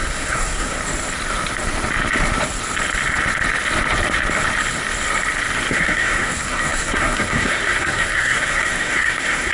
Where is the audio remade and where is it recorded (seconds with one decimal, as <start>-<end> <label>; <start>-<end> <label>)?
0.0-0.8 remade; 0.8-5.7 recorded; 5.7-9.5 remade